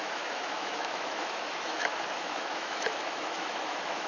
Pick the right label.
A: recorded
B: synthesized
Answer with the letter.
B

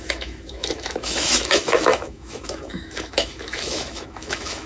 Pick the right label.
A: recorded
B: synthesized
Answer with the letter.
B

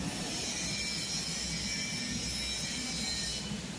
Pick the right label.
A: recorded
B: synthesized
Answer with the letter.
A